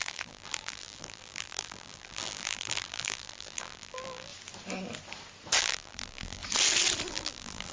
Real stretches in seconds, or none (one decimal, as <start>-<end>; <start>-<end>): 4.3-5.6; 6.4-7.1